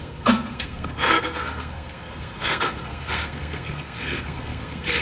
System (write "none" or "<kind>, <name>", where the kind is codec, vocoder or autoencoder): codec, SNAC